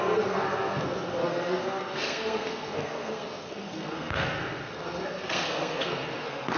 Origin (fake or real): fake